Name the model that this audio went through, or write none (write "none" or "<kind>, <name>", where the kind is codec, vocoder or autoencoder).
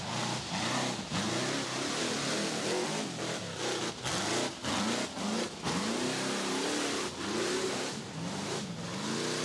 none